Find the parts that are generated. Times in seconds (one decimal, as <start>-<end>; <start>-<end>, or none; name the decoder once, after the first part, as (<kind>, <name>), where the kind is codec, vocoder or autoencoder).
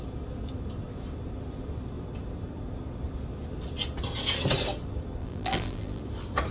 5.2-6.0 (vocoder, BigVGAN v2)